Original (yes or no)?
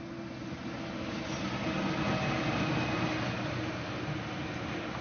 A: yes